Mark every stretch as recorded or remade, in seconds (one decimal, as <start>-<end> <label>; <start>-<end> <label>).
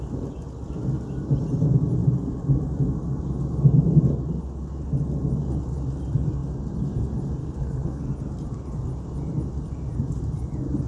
0.0-7.4 recorded; 7.4-8.1 remade; 8.1-10.9 recorded